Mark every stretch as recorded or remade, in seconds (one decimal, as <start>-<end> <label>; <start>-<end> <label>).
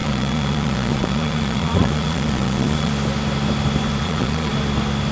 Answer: 0.0-2.9 remade; 2.9-4.0 recorded; 4.0-4.5 remade; 4.5-5.1 recorded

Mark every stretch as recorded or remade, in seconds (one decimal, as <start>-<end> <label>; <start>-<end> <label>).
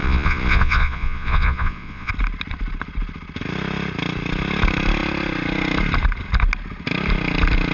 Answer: 0.0-2.1 remade; 2.1-7.7 recorded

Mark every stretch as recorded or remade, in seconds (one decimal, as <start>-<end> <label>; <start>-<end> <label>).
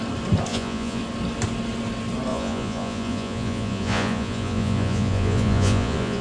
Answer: 0.0-0.5 recorded; 0.5-1.0 remade; 1.0-2.3 recorded; 2.3-6.2 remade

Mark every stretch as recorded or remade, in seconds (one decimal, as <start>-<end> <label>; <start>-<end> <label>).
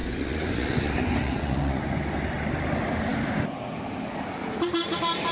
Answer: 0.0-2.0 remade; 2.0-5.3 recorded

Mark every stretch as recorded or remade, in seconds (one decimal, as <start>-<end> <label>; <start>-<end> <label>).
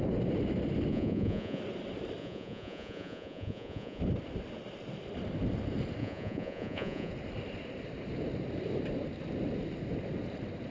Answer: 0.0-0.9 recorded; 0.9-1.6 remade; 1.6-2.2 recorded; 2.2-4.0 remade; 4.0-6.0 recorded; 6.0-7.1 remade; 7.1-10.7 recorded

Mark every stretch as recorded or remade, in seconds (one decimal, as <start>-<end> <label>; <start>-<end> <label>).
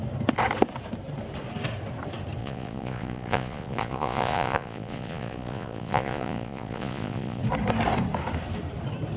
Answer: 0.0-2.4 recorded; 2.4-7.4 remade; 7.4-9.2 recorded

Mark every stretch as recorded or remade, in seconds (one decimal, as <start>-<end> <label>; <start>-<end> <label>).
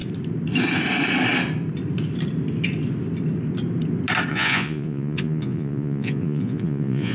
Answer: 0.0-4.3 recorded; 4.3-7.1 remade